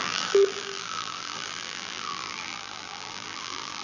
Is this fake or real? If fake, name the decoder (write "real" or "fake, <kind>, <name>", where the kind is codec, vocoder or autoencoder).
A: fake, vocoder, BigVGAN v2